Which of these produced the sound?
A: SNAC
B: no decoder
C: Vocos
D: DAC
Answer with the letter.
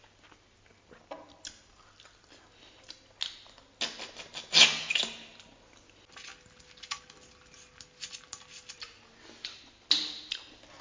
B